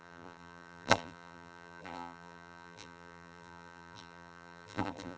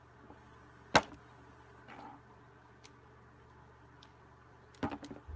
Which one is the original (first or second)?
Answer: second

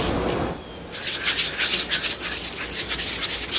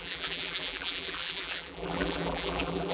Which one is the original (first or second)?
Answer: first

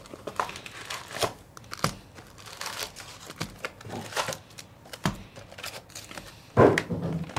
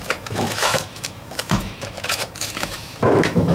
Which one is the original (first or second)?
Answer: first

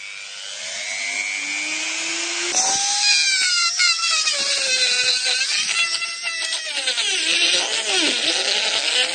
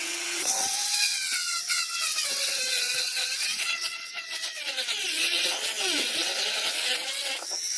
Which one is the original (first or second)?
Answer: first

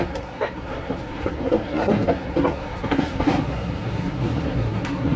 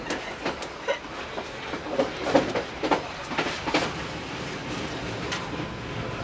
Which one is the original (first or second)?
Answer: second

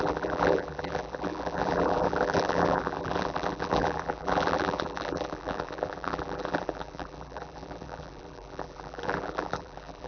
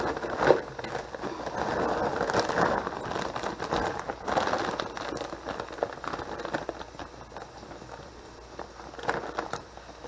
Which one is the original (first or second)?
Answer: second